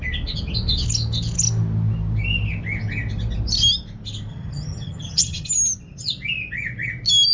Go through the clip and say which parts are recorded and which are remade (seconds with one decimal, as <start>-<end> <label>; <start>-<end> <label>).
0.0-4.3 recorded; 4.3-5.5 remade; 5.5-7.3 recorded